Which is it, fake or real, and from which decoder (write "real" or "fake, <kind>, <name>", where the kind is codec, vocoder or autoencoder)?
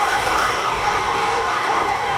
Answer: fake, codec, DAC